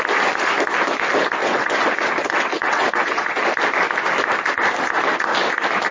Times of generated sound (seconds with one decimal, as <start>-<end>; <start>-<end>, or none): 1.4-3.4